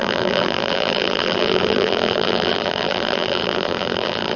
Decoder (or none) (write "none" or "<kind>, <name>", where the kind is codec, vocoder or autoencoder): vocoder, BigVGAN v2